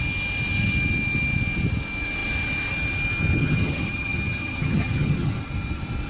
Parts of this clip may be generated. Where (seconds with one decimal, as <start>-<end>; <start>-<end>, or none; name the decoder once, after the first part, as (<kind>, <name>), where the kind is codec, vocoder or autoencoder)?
3.4-5.4 (vocoder, HiFi-GAN)